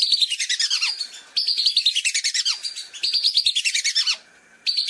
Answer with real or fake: real